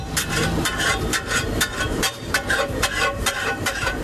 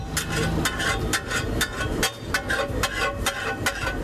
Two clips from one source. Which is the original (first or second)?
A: second